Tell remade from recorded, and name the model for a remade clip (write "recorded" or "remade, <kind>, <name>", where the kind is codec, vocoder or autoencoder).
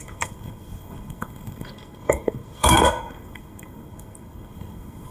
remade, codec, SNAC